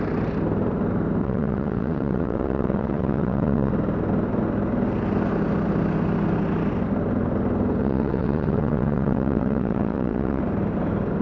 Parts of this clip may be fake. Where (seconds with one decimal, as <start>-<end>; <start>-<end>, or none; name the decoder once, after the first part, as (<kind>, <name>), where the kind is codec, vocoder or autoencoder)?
1.2-3.7 (vocoder, WaveNeXt); 7.8-10.4